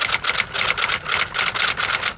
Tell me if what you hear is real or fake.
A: real